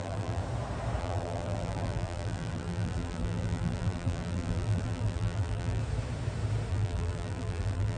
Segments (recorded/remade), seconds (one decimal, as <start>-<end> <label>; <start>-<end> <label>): 0.0-0.4 remade; 0.4-1.0 recorded; 1.0-5.8 remade; 5.8-6.7 recorded; 6.7-8.0 remade